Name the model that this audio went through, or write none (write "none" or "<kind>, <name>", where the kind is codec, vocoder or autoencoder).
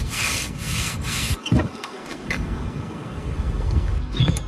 codec, SNAC